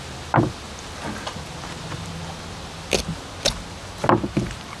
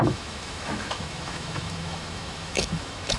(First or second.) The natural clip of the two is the first